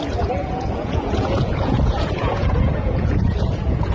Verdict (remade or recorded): remade